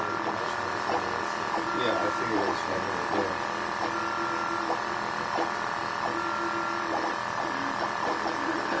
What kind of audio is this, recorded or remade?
recorded